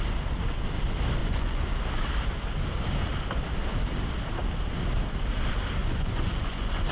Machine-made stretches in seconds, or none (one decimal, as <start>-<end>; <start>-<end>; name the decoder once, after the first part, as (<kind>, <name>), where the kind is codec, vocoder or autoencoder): 1.2-1.8 (vocoder, Vocos); 5.8-6.9